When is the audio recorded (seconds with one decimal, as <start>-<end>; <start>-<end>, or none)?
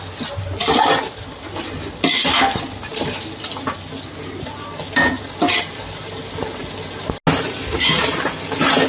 0.0-8.9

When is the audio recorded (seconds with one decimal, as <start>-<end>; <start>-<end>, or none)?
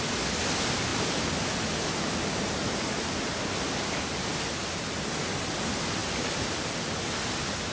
0.0-4.6; 5.2-6.0; 7.0-7.7